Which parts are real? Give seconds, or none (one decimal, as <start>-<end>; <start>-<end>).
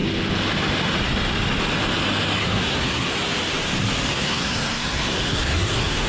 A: 0.0-2.4; 3.1-4.1